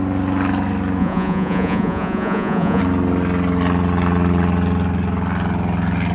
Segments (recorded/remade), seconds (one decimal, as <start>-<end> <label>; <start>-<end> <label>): 0.0-1.0 recorded; 1.0-2.8 remade; 2.8-6.1 recorded